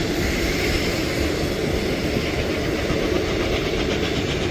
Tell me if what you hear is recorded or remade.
recorded